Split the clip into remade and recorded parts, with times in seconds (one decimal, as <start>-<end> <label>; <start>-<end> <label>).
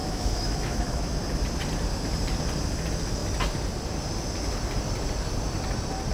0.0-1.2 remade; 1.2-6.1 recorded